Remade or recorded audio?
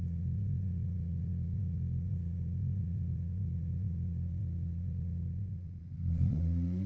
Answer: remade